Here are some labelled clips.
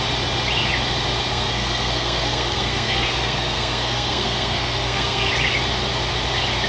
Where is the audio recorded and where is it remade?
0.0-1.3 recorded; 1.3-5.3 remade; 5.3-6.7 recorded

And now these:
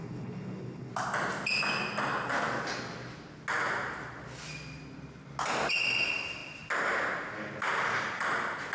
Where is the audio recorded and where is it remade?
0.0-0.9 remade; 0.9-8.7 recorded

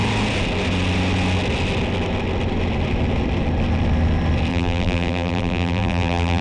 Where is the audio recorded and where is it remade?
0.0-4.5 recorded; 4.5-6.4 remade

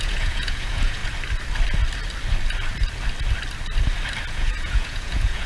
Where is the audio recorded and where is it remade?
0.0-1.0 remade; 1.0-4.3 recorded; 4.3-5.5 remade

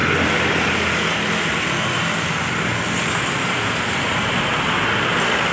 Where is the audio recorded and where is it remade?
0.0-5.5 recorded

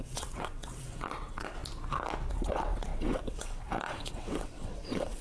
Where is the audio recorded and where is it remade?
0.0-1.6 remade; 1.6-2.3 recorded; 2.3-5.2 remade